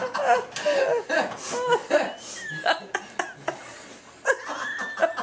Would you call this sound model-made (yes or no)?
no